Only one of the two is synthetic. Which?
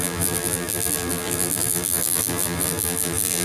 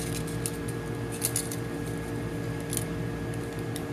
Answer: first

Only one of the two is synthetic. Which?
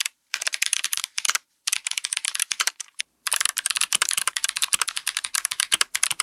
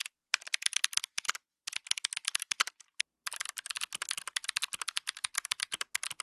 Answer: first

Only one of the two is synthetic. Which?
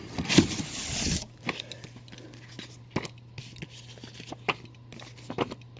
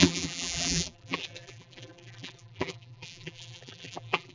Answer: second